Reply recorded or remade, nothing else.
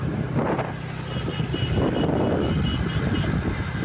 recorded